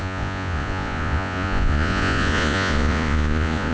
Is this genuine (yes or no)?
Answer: no